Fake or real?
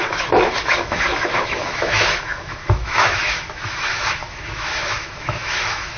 fake